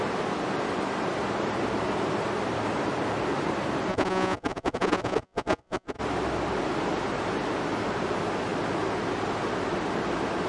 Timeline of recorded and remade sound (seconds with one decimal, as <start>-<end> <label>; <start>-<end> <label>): 0.0-3.9 recorded; 3.9-6.0 remade; 6.0-10.5 recorded